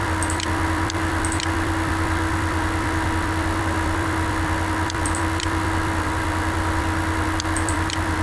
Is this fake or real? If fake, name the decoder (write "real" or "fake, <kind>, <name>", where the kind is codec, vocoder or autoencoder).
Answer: fake, vocoder, BigVGAN v2